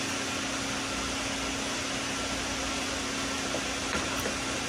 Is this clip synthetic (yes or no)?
no